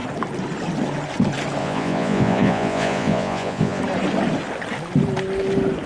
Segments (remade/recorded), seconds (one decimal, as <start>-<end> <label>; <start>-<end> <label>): 0.0-1.6 recorded; 1.6-3.8 remade; 3.8-5.9 recorded